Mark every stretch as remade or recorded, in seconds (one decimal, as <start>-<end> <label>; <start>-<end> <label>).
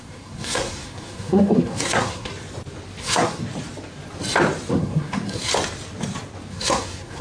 0.0-2.3 remade; 2.3-3.0 recorded; 3.0-3.4 remade; 3.4-4.7 recorded; 4.7-5.5 remade; 5.5-6.5 recorded; 6.5-7.2 remade